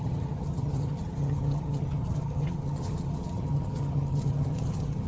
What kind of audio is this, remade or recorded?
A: remade